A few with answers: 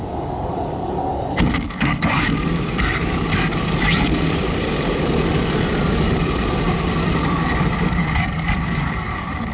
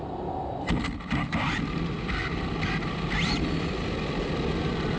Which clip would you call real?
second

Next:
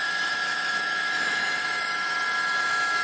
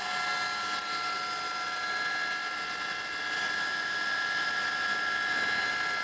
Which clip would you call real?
second